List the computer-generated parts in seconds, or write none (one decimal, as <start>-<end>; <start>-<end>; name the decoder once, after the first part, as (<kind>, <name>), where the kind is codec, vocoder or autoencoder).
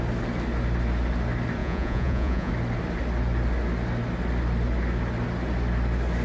1.6-2.5 (vocoder, Vocos)